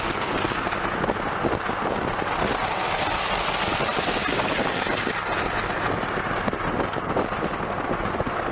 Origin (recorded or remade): recorded